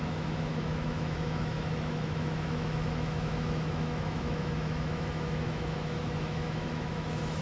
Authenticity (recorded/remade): remade